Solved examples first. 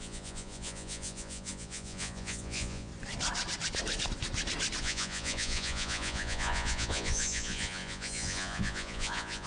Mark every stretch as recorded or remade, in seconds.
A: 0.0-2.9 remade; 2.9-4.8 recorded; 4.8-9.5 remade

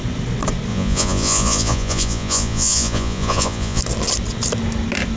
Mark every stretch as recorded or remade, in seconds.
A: 0.0-0.7 recorded; 0.7-3.8 remade; 3.8-5.2 recorded